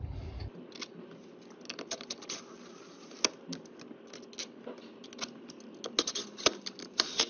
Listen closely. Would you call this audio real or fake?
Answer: real